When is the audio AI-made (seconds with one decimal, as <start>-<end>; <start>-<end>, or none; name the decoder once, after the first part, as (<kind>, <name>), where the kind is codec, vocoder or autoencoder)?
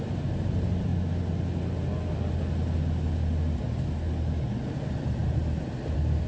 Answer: 0.0-0.9 (vocoder, BigVGAN v2); 4.7-6.3